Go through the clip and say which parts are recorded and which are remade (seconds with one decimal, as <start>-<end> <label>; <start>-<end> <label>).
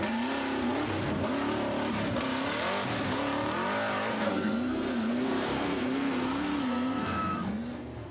0.0-4.1 recorded; 4.1-8.1 remade